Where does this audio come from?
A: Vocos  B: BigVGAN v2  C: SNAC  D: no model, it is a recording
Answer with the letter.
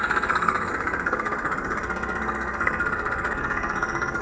C